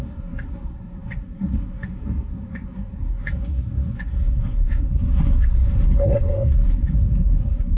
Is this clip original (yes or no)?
no